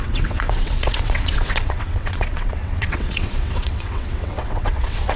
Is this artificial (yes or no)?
yes